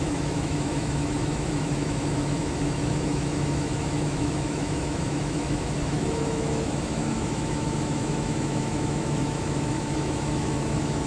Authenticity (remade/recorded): remade